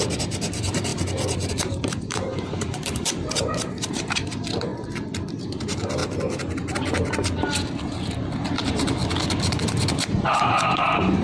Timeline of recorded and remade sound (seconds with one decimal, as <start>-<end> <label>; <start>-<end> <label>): 0.0-0.9 remade; 0.9-1.5 recorded; 1.5-4.7 remade; 4.7-5.3 recorded; 5.3-6.0 remade; 6.0-8.6 recorded; 8.6-9.0 remade; 9.0-9.5 recorded; 9.5-11.2 remade